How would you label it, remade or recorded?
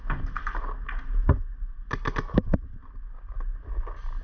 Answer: recorded